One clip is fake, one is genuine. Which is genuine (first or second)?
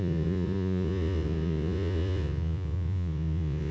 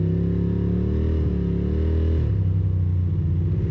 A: second